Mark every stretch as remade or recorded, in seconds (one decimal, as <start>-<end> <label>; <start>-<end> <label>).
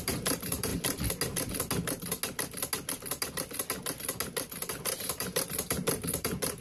0.0-0.7 remade; 0.7-4.7 recorded; 4.7-6.6 remade